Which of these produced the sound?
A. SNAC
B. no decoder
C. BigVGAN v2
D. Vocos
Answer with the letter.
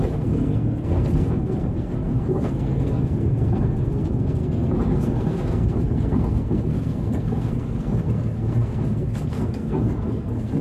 A